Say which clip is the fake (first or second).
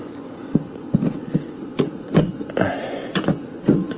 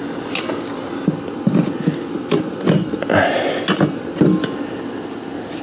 first